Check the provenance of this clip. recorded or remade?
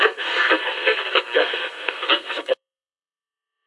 remade